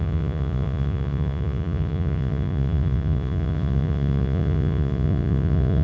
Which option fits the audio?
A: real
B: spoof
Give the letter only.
B